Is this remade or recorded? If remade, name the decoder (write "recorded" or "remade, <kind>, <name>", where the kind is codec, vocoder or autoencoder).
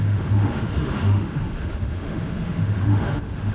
remade, autoencoder, DAC-VAE